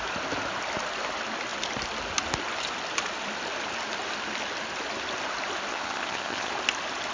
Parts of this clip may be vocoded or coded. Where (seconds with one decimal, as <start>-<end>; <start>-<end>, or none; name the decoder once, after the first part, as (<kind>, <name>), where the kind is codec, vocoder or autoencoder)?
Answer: 5.7-6.5 (vocoder, HiFi-GAN)